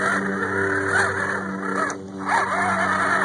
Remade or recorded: recorded